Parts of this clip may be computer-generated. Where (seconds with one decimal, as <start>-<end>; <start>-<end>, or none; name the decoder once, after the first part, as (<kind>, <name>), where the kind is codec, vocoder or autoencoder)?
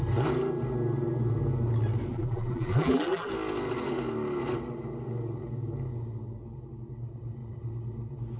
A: 2.1-3.3 (vocoder, BigVGAN v2)